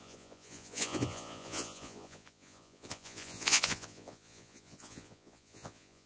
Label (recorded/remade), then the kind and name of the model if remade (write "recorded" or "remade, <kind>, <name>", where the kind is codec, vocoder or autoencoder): remade, vocoder, Vocos